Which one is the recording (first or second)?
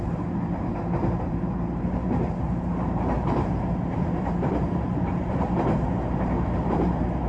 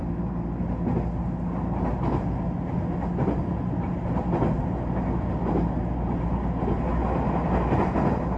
second